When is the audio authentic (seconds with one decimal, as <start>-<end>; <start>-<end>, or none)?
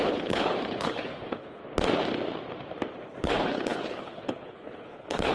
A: 1.6-3.1